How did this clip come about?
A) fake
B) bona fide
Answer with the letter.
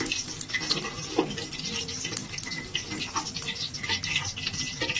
B